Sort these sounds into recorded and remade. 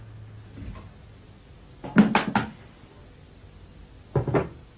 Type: recorded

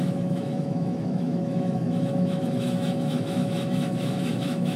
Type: remade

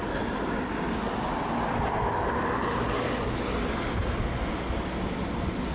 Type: recorded